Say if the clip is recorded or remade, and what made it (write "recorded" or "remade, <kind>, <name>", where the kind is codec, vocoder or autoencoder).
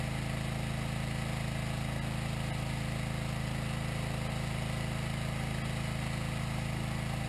recorded